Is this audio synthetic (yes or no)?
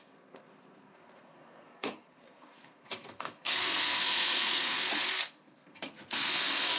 yes